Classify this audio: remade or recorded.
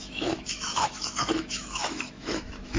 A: remade